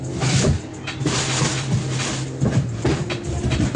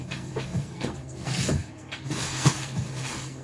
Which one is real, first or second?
first